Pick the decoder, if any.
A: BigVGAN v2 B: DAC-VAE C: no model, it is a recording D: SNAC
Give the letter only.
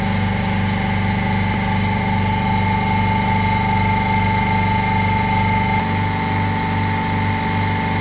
C